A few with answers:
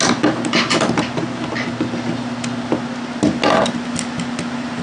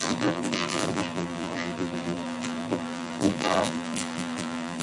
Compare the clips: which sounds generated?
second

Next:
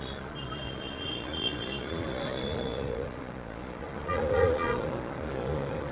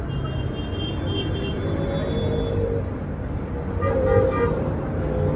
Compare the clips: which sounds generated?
first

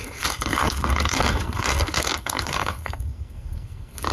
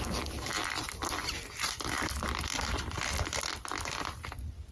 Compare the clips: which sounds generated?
first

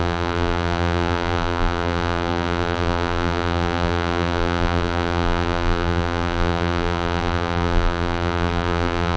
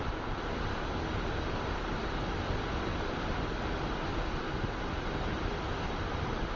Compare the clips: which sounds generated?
first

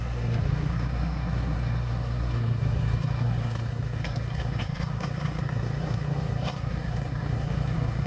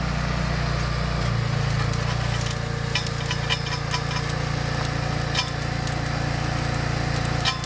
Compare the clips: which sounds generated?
first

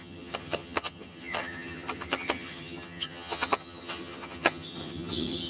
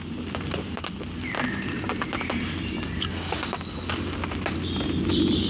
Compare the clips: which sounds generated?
first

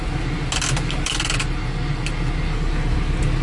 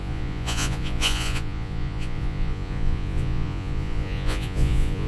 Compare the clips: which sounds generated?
second